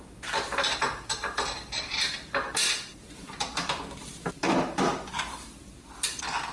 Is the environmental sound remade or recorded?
remade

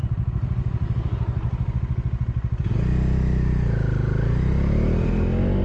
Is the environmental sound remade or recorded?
recorded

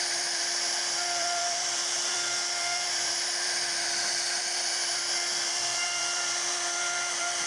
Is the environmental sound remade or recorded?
remade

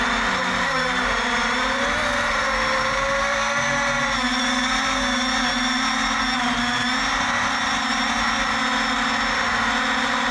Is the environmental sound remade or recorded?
recorded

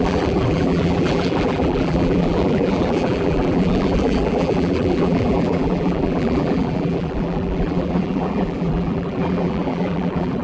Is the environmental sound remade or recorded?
remade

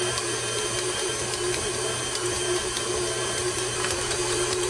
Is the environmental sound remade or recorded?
remade